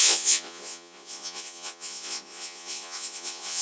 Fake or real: fake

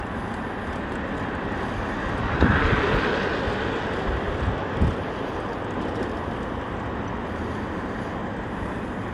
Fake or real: real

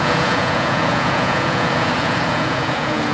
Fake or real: fake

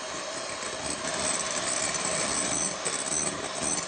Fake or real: real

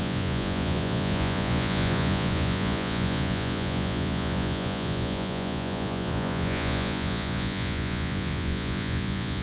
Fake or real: fake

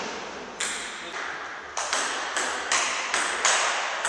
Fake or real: real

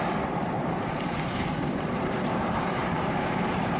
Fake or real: fake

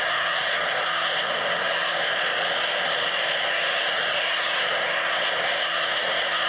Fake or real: real